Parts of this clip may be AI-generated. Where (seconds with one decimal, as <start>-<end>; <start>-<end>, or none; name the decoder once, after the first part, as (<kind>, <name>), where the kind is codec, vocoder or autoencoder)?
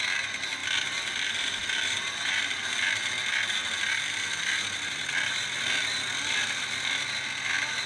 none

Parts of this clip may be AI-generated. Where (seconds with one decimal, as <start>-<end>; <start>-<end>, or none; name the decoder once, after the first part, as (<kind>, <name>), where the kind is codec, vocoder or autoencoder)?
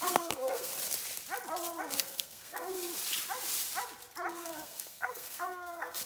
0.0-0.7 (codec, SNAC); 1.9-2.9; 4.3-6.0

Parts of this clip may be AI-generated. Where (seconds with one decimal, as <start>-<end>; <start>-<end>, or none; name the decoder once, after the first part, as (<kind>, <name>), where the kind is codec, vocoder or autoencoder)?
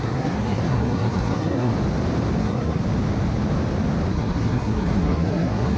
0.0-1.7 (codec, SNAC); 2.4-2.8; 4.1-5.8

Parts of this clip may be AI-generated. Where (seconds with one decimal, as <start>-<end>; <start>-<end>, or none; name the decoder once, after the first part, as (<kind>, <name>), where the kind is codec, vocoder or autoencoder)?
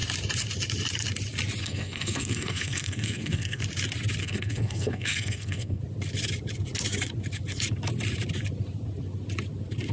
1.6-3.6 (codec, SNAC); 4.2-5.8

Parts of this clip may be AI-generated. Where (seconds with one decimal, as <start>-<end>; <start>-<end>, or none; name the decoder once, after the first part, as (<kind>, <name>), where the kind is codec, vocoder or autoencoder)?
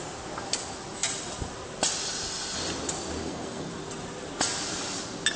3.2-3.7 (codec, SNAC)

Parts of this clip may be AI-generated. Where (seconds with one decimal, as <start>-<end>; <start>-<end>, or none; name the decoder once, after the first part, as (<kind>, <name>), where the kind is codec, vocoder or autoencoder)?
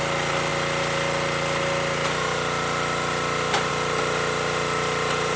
none